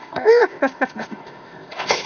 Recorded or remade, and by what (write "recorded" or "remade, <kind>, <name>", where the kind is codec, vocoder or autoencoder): remade, codec, ZipCodec